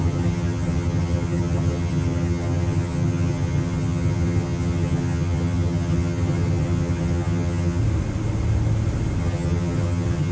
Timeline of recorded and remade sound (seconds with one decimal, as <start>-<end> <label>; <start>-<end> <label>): 0.0-7.8 remade; 7.8-9.2 recorded; 9.2-10.3 remade